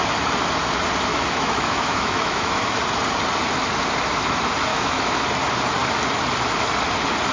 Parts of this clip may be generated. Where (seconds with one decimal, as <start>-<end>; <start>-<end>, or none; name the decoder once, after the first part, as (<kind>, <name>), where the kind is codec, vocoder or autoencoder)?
1.1-2.8 (autoencoder, DAC-VAE); 4.7-5.2